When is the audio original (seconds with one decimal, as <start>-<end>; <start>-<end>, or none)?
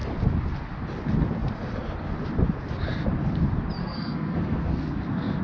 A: 0.0-3.8